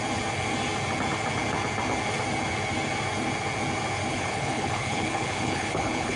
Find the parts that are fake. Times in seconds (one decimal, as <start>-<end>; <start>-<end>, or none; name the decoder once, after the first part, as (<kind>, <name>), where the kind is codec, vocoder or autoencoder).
4.1-6.2 (codec, HILCodec)